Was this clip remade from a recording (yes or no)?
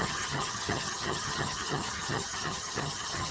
yes